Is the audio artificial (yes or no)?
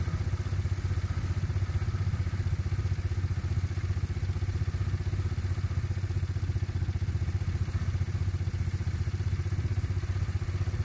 no